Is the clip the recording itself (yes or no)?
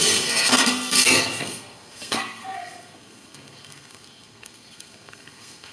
no